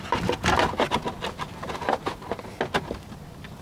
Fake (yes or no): no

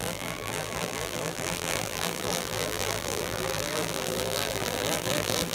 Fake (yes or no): yes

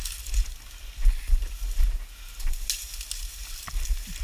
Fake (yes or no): no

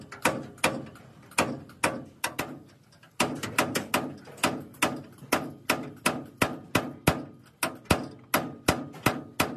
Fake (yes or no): no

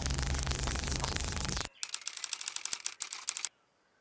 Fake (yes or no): no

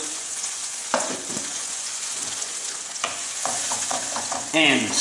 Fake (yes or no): yes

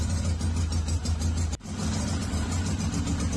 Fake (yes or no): no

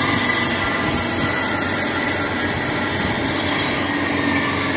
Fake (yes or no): no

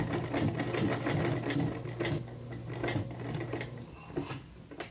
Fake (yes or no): no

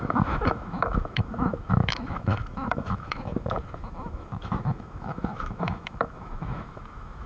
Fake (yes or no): yes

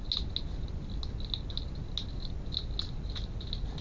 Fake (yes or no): no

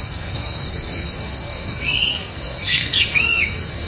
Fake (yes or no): yes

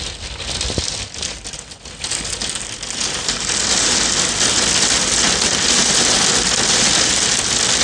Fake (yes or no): no